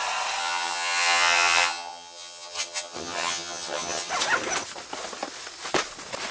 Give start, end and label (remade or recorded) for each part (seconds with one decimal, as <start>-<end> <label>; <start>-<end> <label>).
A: 0.0-0.4 recorded; 0.4-4.1 remade; 4.1-6.3 recorded